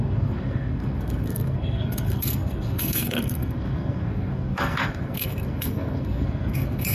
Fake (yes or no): yes